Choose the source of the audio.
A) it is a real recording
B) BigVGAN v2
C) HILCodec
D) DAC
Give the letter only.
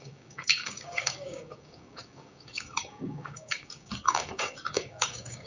D